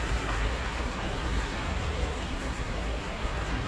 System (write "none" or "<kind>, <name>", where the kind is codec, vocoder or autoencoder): codec, SNAC